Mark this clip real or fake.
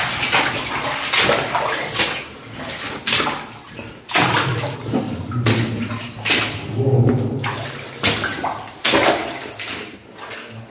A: real